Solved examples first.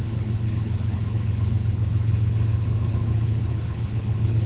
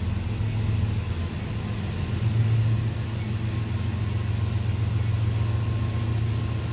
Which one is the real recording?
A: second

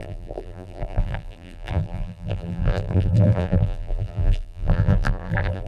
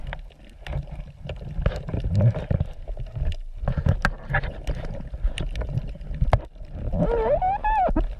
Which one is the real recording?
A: second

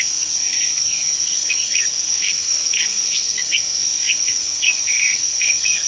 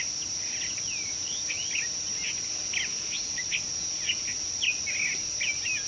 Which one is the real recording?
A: second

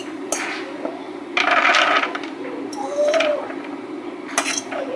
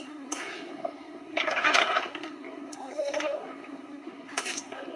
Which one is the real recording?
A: first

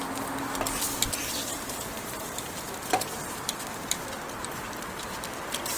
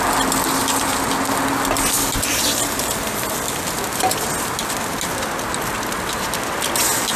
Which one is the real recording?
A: second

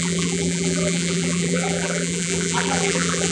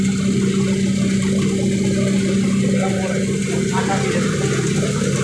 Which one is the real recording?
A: second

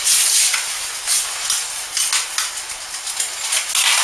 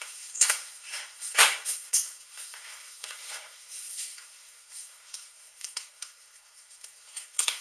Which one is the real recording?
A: first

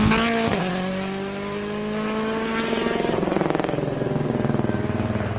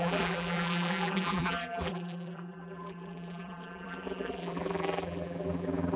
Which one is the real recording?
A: first